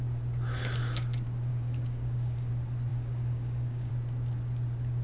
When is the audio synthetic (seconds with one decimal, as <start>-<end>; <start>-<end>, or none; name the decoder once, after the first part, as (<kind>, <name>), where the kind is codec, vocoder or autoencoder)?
1.5-2.5 (codec, DAC); 2.9-3.9